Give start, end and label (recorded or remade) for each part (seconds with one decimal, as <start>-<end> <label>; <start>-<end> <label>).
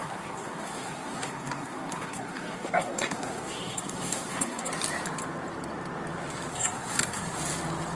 0.0-4.7 remade; 4.7-6.5 recorded; 6.5-7.4 remade; 7.4-7.9 recorded